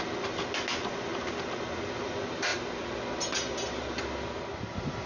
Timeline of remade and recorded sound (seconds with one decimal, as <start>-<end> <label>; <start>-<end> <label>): 0.0-5.1 recorded